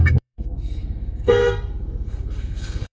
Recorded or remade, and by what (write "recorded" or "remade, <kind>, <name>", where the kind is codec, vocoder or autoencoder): remade, codec, SNAC